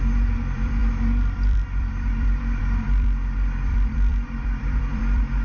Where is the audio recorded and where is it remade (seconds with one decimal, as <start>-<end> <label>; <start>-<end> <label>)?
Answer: 0.0-5.4 remade